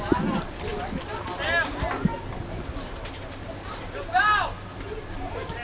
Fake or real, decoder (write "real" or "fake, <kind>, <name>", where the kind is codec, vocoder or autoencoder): real